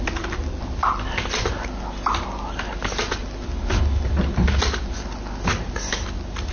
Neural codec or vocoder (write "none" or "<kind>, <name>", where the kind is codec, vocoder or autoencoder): none